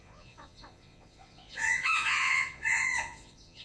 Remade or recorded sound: remade